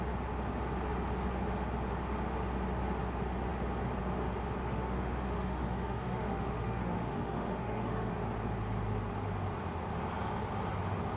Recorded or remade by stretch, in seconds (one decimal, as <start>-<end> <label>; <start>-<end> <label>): 0.0-4.6 recorded; 4.6-8.1 remade; 8.1-11.2 recorded

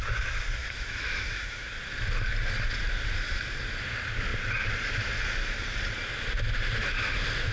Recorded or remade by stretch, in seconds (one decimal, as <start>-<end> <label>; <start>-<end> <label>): 0.0-0.6 recorded; 0.6-1.7 remade; 1.7-7.5 recorded

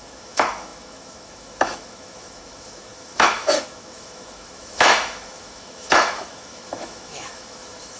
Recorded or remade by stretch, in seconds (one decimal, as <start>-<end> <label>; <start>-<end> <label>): 0.0-8.0 remade

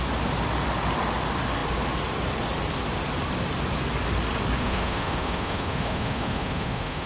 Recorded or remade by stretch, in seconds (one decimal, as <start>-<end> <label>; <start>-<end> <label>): 0.0-4.6 recorded; 4.6-7.1 remade

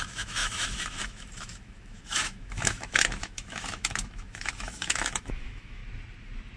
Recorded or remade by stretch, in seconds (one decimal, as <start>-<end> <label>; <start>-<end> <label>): 0.0-5.8 remade; 5.8-6.6 recorded

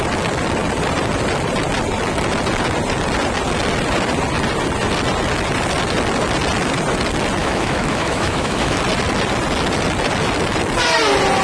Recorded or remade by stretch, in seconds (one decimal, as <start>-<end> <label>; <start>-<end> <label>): 0.0-7.4 recorded; 7.4-8.8 remade; 8.8-11.4 recorded

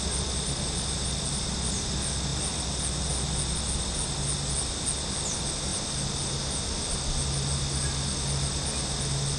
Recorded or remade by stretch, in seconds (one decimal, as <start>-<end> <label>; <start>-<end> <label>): 0.0-9.4 recorded